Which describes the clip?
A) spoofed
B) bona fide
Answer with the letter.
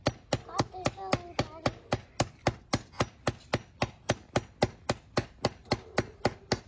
B